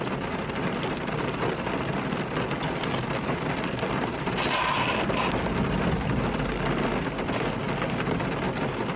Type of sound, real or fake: real